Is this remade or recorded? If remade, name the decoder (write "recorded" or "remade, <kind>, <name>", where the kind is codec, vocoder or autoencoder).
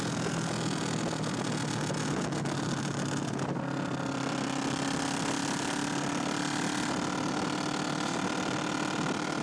recorded